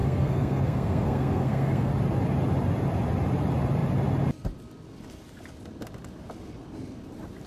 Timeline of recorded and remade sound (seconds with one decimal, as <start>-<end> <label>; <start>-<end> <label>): 0.0-1.9 remade; 1.9-7.5 recorded